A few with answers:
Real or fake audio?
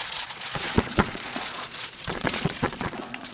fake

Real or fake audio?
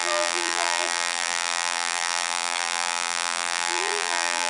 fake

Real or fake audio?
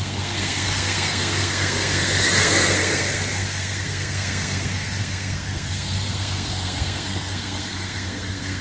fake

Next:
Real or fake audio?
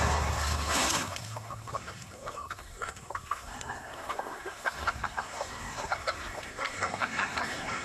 fake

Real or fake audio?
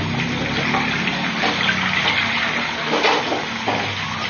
real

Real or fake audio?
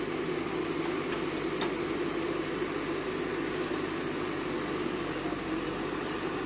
real